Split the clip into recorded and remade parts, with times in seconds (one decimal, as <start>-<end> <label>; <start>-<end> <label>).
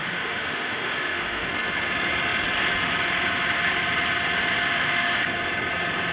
0.0-1.5 remade; 1.5-4.7 recorded; 4.7-5.2 remade; 5.2-6.1 recorded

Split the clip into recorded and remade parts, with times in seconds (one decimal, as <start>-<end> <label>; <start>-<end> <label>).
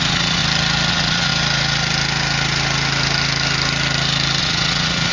0.0-0.4 remade; 0.4-0.9 recorded; 0.9-1.3 remade; 1.3-4.4 recorded; 4.4-5.1 remade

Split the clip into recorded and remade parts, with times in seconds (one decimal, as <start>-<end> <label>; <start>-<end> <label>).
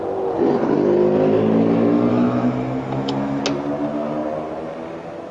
0.0-2.1 recorded; 2.1-3.4 remade; 3.4-5.3 recorded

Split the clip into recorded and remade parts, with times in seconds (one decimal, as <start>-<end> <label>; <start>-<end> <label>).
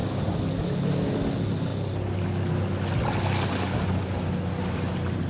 0.0-5.3 recorded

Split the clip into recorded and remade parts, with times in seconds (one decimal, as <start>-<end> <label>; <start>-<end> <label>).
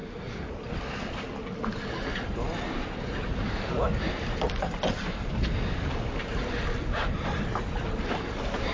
0.0-8.7 recorded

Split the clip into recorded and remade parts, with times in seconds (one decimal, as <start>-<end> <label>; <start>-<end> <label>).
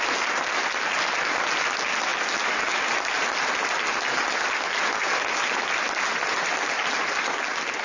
0.0-7.8 recorded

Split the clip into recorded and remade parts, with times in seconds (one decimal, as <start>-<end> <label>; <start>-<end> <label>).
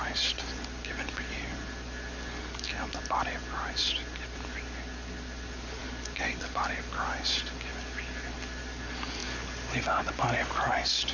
0.0-11.1 recorded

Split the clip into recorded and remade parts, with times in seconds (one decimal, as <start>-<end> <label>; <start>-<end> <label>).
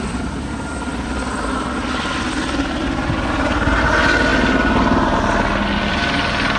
0.0-6.6 recorded